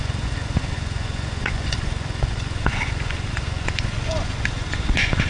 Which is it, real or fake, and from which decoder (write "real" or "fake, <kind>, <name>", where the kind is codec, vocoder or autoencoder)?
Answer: fake, vocoder, Vocos